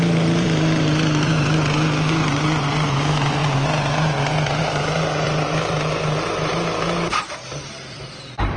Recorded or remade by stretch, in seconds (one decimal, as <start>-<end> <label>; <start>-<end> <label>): 0.0-3.4 remade; 3.4-4.6 recorded; 4.6-6.5 remade; 6.5-7.1 recorded; 7.1-8.6 remade